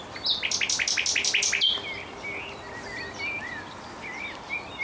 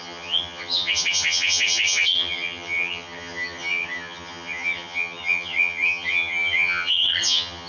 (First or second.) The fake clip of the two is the second